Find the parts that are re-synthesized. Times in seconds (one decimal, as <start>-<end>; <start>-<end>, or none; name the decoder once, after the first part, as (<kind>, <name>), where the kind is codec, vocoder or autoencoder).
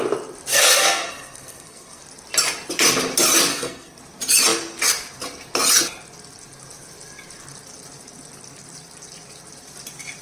0.5-2.0 (codec, SNAC); 3.5-4.0